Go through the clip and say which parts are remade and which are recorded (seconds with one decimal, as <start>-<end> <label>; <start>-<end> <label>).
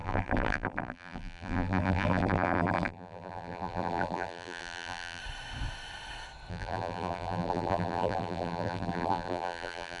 0.0-5.2 remade; 5.2-6.5 recorded; 6.5-10.0 remade